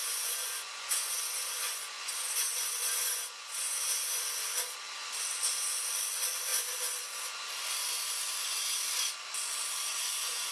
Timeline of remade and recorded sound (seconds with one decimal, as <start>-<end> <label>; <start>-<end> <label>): 0.0-4.2 remade; 4.2-9.9 recorded; 9.9-10.5 remade